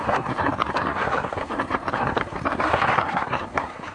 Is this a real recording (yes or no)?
no